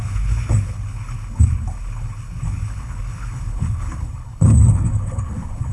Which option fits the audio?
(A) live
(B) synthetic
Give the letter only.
B